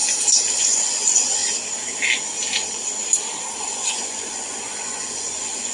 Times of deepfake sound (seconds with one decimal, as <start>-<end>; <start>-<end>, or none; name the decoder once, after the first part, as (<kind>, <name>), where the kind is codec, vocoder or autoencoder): 0.6-1.4 (vocoder, Vocos); 3.6-5.7

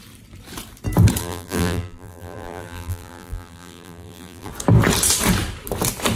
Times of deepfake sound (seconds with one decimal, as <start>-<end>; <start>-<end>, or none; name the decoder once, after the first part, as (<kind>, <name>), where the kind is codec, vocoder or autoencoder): 1.2-4.5 (vocoder, BigVGAN v2)